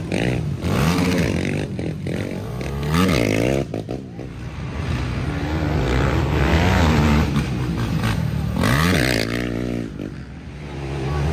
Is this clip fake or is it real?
real